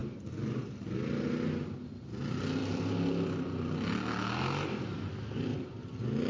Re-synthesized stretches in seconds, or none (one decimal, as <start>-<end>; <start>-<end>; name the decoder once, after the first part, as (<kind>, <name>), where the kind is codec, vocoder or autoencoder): none